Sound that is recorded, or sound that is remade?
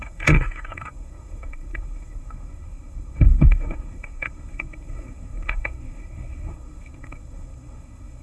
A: remade